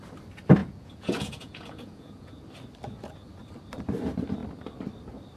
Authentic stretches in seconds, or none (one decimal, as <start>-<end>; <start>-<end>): 0.0-0.6; 2.4-5.4